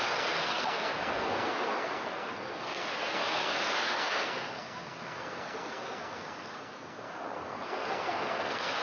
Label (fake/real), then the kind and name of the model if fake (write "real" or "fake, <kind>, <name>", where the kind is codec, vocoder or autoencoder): fake, codec, SNAC